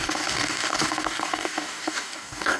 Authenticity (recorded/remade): remade